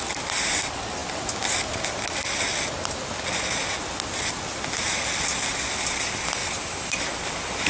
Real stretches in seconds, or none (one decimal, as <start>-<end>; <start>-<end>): 0.0-6.4; 7.0-7.7